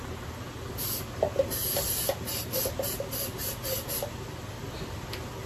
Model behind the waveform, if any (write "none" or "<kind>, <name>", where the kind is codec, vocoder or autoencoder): none